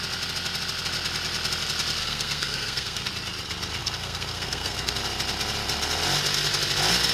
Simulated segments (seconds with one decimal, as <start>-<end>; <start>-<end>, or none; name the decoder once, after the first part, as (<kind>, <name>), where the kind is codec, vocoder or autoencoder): 2.0-3.1 (codec, SNAC); 3.8-4.9